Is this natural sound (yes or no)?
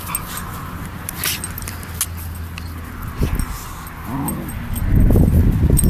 yes